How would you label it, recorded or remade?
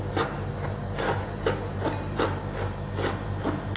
recorded